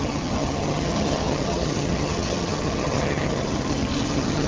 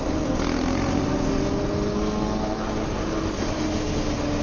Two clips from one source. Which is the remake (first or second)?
first